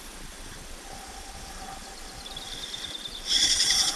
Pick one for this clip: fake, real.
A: real